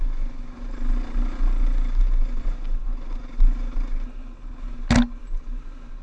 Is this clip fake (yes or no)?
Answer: no